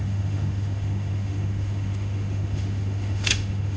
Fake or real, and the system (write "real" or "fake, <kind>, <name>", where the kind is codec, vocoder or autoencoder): fake, autoencoder, DAC-VAE